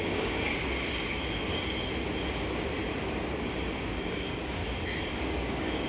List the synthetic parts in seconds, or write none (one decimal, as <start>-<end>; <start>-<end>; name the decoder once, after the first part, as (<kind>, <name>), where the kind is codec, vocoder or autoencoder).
0.0-0.5 (codec, DAC); 4.0-4.6; 5.1-5.9